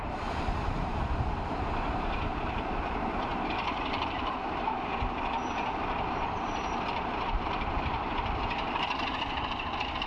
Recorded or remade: remade